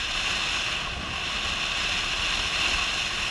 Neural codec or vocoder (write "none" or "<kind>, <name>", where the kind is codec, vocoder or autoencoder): none